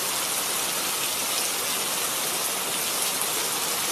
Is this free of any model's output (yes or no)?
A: yes